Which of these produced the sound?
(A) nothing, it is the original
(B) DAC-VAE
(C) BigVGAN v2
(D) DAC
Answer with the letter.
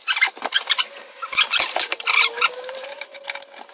C